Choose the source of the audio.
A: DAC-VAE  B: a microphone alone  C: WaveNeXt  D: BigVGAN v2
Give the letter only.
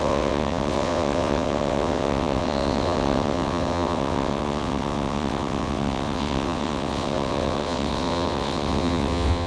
C